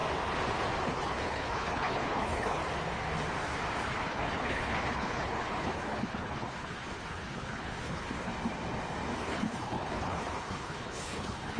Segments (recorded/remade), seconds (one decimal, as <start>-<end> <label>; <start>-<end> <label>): 0.0-0.8 recorded; 0.8-2.6 remade; 2.6-3.9 recorded; 3.9-8.3 remade; 8.3-9.2 recorded; 9.2-11.6 remade

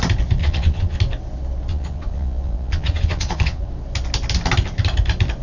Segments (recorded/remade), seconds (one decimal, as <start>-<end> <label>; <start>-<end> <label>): 0.0-0.4 recorded; 0.4-1.0 remade; 1.0-1.7 recorded; 1.7-3.7 remade; 3.7-5.4 recorded